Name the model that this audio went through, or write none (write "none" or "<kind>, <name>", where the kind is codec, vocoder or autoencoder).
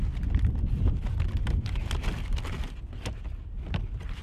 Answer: none